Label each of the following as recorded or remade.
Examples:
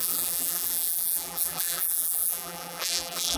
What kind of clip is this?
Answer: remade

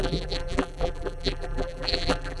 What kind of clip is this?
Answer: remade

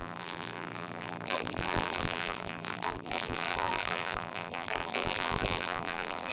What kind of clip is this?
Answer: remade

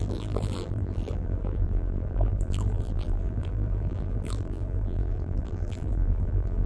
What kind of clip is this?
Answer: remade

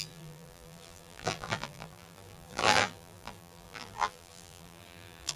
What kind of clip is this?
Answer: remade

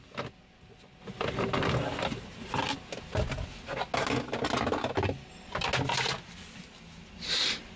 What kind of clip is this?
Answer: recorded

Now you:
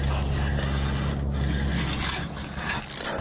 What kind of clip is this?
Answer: recorded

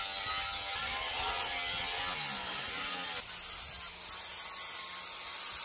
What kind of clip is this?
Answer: recorded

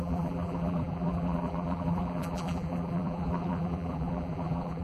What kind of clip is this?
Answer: remade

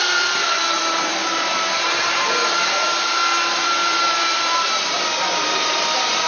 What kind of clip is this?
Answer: remade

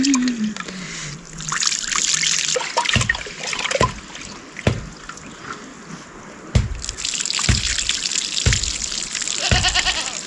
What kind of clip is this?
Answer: recorded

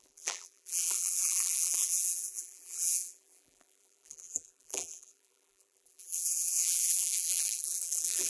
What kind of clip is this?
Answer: remade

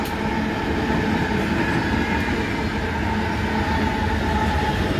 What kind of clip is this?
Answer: recorded